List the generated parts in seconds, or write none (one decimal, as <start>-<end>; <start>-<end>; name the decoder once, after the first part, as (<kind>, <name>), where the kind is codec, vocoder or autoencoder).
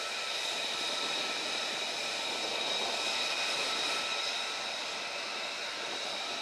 3.6-5.3 (vocoder, BigVGAN v2)